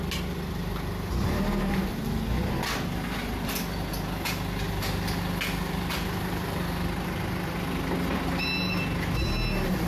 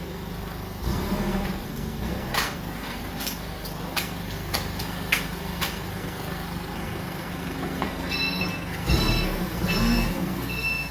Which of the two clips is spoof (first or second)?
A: second